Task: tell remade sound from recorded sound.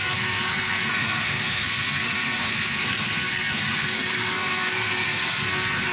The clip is remade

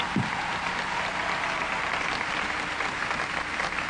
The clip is remade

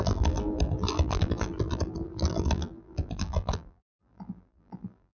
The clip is remade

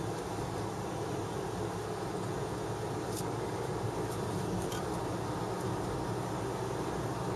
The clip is recorded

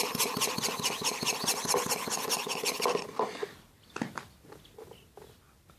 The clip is recorded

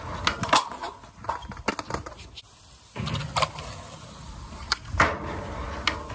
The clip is recorded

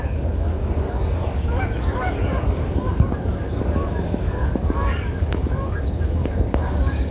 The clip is remade